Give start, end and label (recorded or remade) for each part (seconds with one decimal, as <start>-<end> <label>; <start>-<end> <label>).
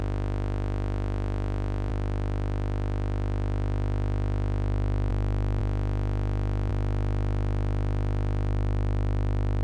0.0-9.6 recorded